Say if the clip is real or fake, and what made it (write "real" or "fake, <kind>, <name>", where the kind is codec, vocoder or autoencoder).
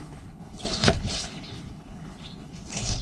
fake, codec, HILCodec